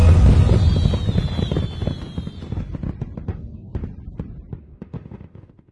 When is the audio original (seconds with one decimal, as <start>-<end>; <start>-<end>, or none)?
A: 0.0-3.3; 3.7-4.6